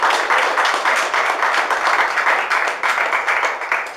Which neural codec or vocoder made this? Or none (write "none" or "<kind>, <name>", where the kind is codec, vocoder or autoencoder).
none